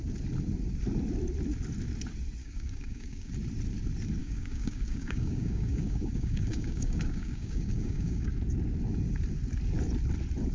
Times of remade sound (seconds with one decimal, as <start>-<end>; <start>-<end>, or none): 2.4-3.3; 4.2-8.3